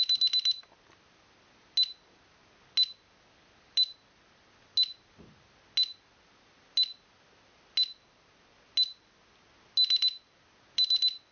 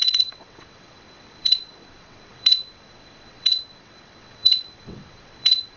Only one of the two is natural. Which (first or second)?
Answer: first